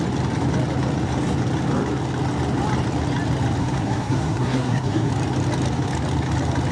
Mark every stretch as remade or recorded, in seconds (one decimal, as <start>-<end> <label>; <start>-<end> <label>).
0.0-3.6 recorded; 3.6-5.1 remade; 5.1-6.7 recorded